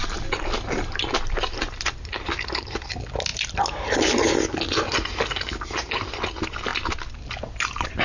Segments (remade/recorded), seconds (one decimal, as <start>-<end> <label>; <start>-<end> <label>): 0.0-3.3 remade; 3.3-5.9 recorded; 5.9-6.7 remade; 6.7-7.3 recorded; 7.3-8.0 remade